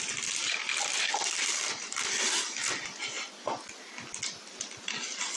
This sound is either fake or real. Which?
real